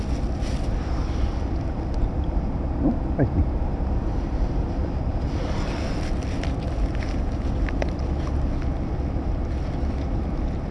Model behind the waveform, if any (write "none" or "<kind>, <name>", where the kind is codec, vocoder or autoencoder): none